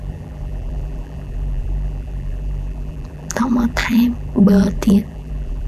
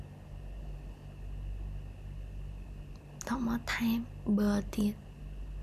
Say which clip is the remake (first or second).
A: first